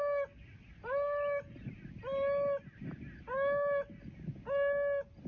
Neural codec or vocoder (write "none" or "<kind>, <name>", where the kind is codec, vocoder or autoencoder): none